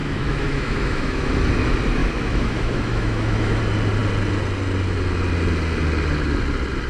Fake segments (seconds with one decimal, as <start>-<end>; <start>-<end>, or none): 0.0-1.3; 2.0-3.6